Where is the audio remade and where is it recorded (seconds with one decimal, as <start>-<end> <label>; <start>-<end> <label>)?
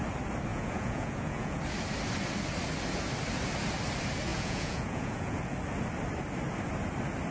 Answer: 0.0-0.5 recorded; 0.5-1.6 remade; 1.6-4.3 recorded; 4.3-5.4 remade; 5.4-7.3 recorded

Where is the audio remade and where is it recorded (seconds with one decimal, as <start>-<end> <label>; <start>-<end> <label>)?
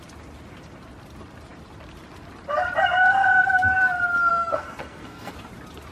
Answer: 0.0-4.3 recorded; 4.3-5.3 remade; 5.3-5.9 recorded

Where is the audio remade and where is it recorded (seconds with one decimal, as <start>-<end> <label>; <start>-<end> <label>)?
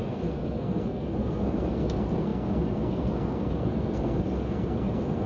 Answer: 0.0-5.3 remade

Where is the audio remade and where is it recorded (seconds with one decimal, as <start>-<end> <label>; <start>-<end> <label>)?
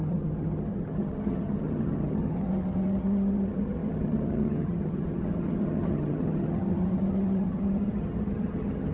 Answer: 0.0-8.9 remade